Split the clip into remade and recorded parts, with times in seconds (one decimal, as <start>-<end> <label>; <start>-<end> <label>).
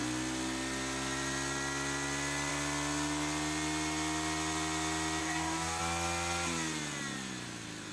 0.0-5.2 recorded; 5.2-5.8 remade; 5.8-7.9 recorded